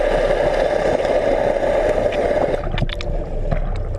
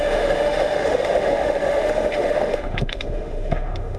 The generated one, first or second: second